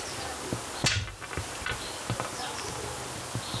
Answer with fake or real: real